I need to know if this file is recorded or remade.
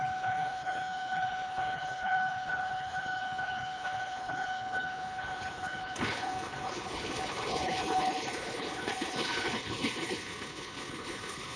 remade